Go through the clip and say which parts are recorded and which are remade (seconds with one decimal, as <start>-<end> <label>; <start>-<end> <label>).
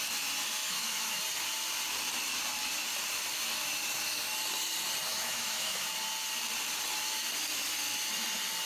0.0-0.6 recorded; 0.6-1.2 remade; 1.2-5.1 recorded; 5.1-5.8 remade; 5.8-8.7 recorded